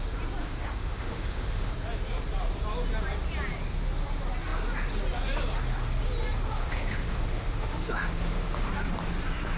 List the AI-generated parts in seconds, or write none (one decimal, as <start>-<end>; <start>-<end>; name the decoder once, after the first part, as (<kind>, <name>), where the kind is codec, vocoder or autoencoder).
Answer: 0.4-1.7 (autoencoder, DAC-VAE); 6.6-8.7